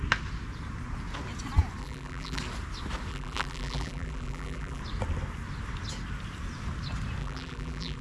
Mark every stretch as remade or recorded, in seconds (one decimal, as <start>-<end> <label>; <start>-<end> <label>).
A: 0.0-1.8 recorded; 1.8-2.4 remade; 2.4-3.1 recorded; 3.1-4.8 remade; 4.8-7.2 recorded; 7.2-8.0 remade